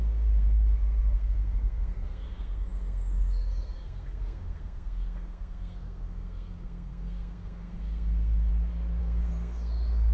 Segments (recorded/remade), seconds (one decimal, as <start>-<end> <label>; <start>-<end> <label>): 0.0-8.5 remade; 8.5-9.0 recorded; 9.0-10.1 remade